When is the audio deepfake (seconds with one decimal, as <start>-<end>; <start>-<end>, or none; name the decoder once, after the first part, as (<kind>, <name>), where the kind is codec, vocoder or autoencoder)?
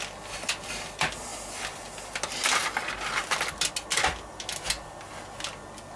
none